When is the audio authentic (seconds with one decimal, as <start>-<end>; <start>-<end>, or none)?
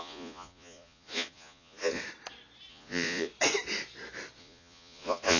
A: 2.0-2.7; 3.3-4.4